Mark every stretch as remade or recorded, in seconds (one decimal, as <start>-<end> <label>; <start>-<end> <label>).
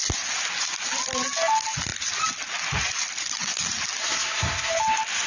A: 0.0-4.0 recorded; 4.0-4.7 remade; 4.7-5.3 recorded